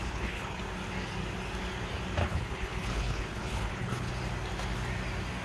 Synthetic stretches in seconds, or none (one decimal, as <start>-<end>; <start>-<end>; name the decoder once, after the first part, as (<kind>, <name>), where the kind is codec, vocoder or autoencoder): 0.0-0.6 (codec, HILCodec); 2.2-4.1